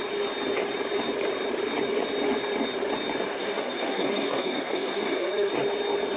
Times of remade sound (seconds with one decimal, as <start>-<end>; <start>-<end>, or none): 3.3-5.5